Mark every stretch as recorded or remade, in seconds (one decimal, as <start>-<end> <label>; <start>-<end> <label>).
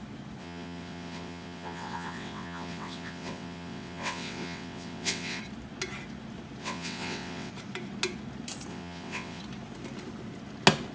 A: 0.0-0.4 recorded; 0.4-5.4 remade; 5.4-6.6 recorded; 6.6-7.5 remade; 7.5-8.7 recorded; 8.7-9.4 remade; 9.4-10.9 recorded